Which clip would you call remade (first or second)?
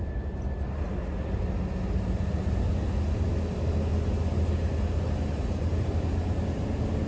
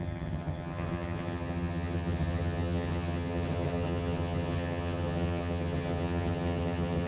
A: second